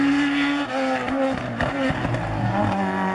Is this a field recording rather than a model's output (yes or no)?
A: yes